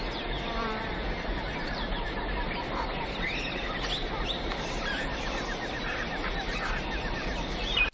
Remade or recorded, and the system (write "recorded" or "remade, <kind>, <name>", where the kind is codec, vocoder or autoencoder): remade, vocoder, BigVGAN v2